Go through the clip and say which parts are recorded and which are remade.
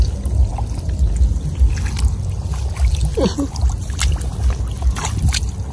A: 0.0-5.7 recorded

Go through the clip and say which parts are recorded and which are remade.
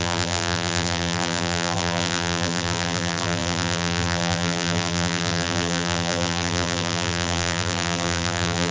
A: 0.0-8.7 remade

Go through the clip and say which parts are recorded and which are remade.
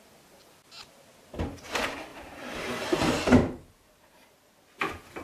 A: 0.0-2.1 recorded; 2.1-3.0 remade; 3.0-5.2 recorded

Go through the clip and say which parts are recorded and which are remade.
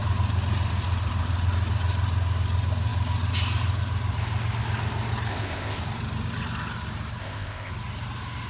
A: 0.0-5.3 recorded; 5.3-5.8 remade; 5.8-7.2 recorded; 7.2-7.7 remade; 7.7-8.5 recorded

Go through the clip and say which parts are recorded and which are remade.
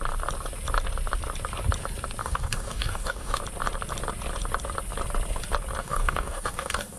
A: 0.0-2.2 recorded; 2.2-3.4 remade; 3.4-5.8 recorded; 5.8-7.0 remade